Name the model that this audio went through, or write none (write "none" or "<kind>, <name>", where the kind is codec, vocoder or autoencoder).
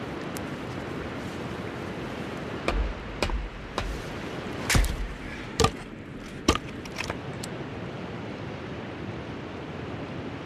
vocoder, BigVGAN v2